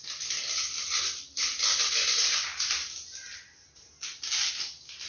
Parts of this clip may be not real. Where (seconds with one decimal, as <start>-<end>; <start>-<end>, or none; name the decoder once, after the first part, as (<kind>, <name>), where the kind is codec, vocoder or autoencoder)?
none